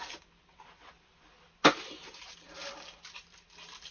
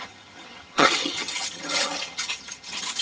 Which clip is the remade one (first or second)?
second